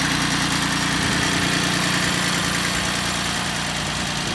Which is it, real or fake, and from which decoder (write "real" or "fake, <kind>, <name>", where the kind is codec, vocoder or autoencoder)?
real